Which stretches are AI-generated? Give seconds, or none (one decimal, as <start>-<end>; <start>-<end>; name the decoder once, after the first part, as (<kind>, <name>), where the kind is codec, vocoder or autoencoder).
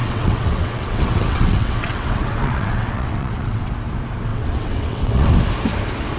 0.0-3.7 (vocoder, WaveNeXt); 4.3-5.3